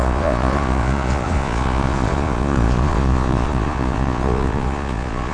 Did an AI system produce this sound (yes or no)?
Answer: yes